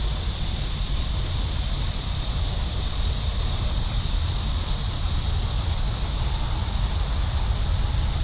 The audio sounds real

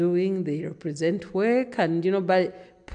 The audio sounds real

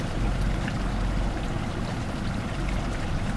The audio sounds real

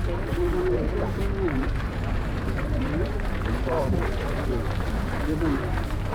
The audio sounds fake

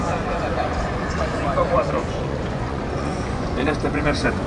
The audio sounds fake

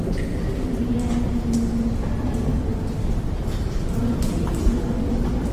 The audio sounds real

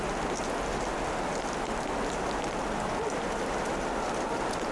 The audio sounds real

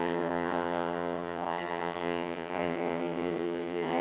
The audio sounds fake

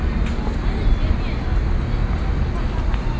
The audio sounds real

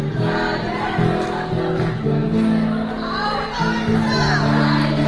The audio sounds real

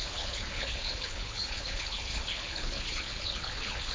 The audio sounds fake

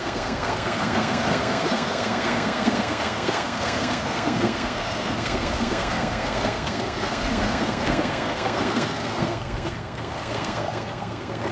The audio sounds fake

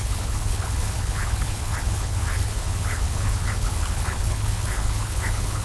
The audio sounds fake